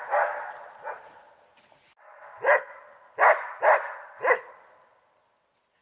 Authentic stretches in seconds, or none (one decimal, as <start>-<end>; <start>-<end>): 0.0-5.8